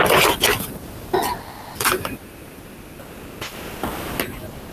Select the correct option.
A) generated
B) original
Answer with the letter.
B